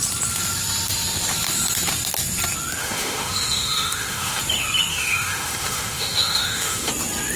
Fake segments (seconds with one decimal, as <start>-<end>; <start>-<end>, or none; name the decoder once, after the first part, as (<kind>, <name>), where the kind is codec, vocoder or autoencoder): 2.8-4.4 (autoencoder, DAC-VAE); 4.9-6.9